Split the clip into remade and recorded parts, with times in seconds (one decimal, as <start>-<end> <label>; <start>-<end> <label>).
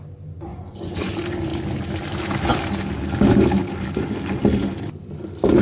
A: 0.0-0.5 recorded; 0.5-1.1 remade; 1.1-5.6 recorded